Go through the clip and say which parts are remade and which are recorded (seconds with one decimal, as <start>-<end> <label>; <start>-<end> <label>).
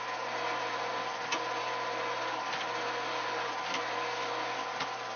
0.0-5.2 recorded